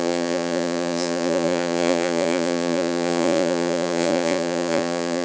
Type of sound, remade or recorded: remade